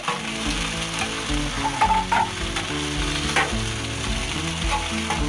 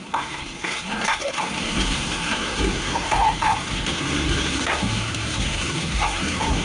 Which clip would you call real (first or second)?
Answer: first